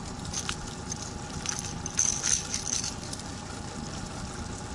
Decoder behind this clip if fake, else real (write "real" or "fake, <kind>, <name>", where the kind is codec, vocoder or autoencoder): fake, vocoder, BigVGAN v2